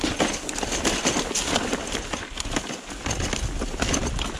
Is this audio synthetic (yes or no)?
no